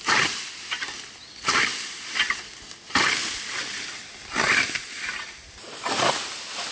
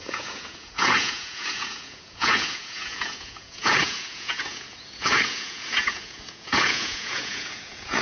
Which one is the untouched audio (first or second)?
first